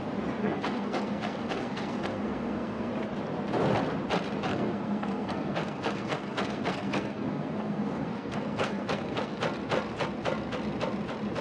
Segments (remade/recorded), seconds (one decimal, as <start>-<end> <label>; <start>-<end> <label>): 0.0-0.4 recorded; 0.4-2.9 remade; 2.9-4.5 recorded; 4.5-9.4 remade; 9.4-11.4 recorded